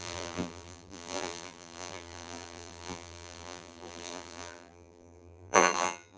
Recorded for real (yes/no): no